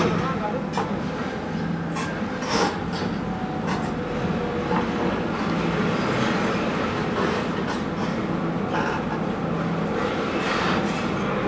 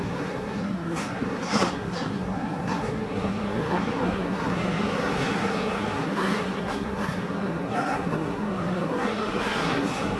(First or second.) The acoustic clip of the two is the first